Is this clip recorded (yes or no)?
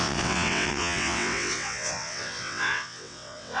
no